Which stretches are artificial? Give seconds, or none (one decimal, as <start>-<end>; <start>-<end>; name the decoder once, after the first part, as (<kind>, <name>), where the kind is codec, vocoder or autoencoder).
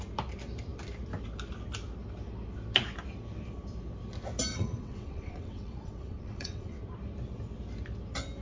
4.5-6.8 (vocoder, WaveNeXt)